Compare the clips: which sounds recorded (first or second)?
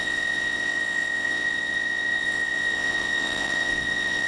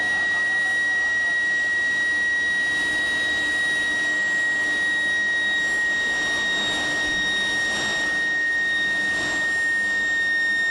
second